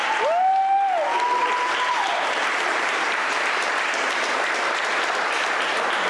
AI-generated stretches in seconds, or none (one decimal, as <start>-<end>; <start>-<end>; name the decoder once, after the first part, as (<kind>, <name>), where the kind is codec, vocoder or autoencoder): 1.4-3.6 (vocoder, BigVGAN v2)